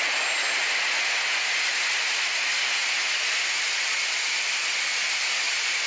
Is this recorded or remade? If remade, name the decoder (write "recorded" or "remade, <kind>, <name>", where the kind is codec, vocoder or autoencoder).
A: recorded